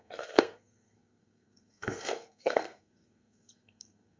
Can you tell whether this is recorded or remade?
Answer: remade